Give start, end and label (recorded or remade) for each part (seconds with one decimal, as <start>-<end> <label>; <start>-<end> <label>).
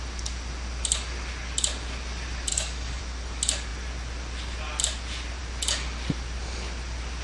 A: 0.0-2.5 recorded; 2.5-3.0 remade; 3.0-7.2 recorded